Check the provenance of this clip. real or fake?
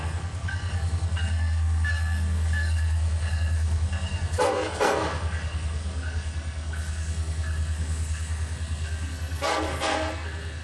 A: fake